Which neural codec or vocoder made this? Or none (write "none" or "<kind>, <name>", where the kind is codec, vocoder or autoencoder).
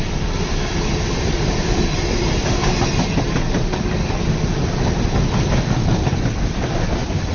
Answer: none